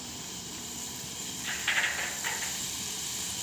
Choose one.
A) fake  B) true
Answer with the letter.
A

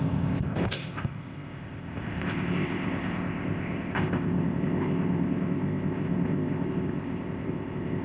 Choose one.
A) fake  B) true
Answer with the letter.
A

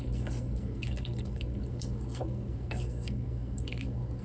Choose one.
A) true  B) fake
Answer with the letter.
B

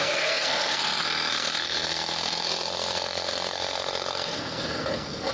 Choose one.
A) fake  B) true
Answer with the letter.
A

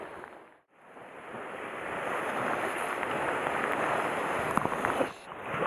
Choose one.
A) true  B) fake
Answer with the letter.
A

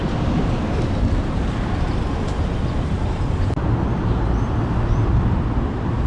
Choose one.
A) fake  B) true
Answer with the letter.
B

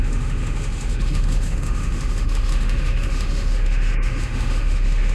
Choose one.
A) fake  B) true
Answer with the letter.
A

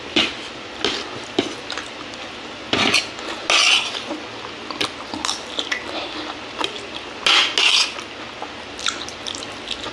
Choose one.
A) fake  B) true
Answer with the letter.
B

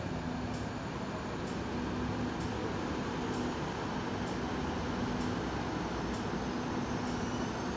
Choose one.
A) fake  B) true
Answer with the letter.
B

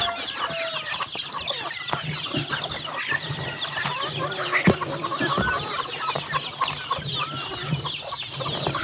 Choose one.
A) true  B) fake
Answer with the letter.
A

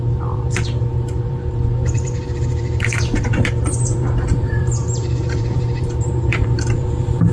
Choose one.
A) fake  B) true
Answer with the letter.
A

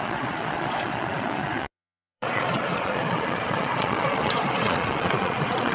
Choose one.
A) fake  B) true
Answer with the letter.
A